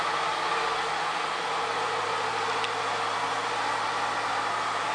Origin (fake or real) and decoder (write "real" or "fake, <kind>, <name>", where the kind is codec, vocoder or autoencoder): real